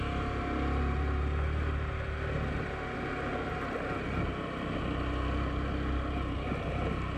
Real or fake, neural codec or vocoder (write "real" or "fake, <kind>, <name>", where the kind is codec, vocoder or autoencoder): real